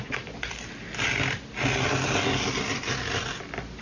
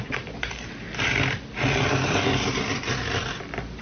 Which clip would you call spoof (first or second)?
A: second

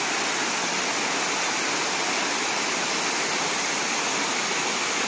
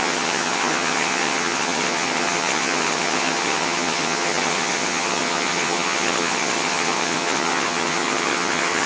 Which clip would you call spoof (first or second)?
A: second